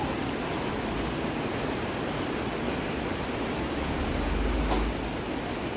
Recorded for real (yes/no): yes